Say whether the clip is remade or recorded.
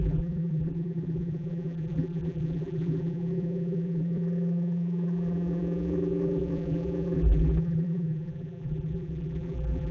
remade